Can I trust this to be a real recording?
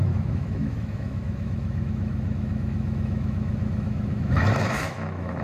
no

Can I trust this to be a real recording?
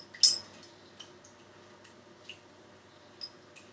yes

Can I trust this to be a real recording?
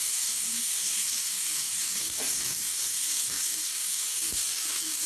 no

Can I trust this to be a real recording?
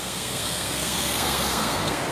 no